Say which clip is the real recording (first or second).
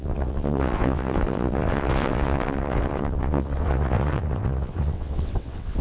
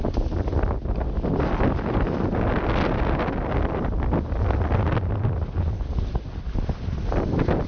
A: second